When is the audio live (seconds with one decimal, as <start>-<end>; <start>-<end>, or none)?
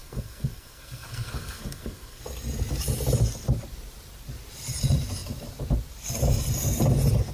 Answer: 2.2-7.3